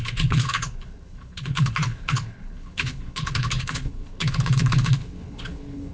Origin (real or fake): fake